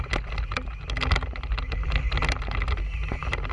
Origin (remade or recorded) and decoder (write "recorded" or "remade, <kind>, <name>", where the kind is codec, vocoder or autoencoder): recorded